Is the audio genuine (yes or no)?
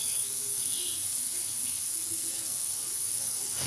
no